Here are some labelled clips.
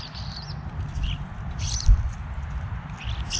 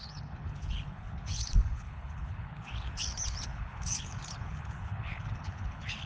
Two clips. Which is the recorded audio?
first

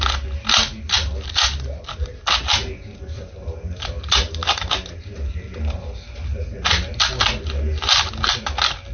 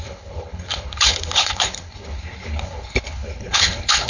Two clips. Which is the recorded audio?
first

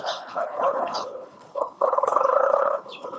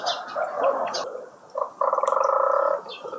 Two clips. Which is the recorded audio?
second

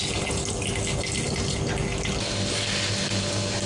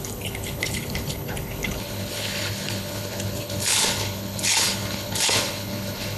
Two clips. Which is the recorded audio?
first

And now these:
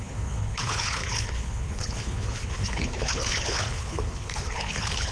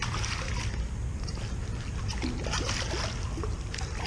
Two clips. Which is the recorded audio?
second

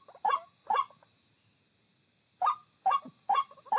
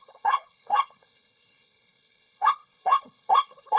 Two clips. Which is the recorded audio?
first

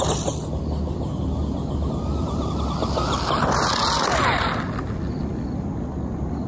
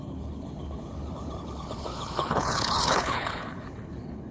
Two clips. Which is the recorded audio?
first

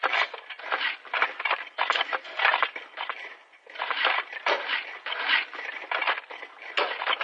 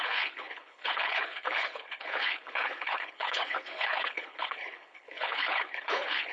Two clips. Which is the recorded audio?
first